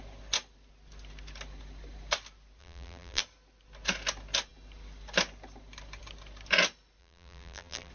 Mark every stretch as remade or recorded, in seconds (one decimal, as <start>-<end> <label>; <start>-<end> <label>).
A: 0.0-2.6 recorded; 2.6-3.2 remade; 3.2-7.0 recorded; 7.0-7.9 remade